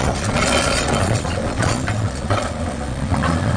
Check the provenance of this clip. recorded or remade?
remade